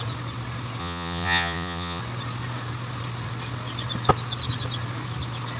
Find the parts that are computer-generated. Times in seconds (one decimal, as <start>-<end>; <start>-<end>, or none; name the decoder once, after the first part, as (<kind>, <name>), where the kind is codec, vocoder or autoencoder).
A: 0.8-2.0 (vocoder, Vocos)